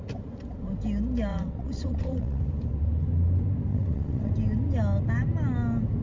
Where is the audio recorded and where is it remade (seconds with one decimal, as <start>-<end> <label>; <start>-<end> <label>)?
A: 0.0-1.3 recorded; 1.3-2.4 remade; 2.4-3.7 recorded; 3.7-4.3 remade; 4.3-6.0 recorded